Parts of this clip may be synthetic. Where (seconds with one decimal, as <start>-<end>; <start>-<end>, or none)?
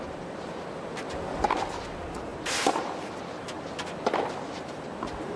none